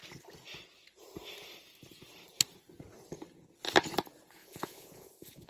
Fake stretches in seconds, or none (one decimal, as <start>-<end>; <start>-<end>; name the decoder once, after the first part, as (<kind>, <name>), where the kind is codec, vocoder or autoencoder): 4.4-5.5 (vocoder, Vocos)